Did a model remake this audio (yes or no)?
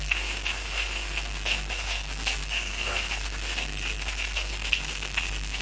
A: yes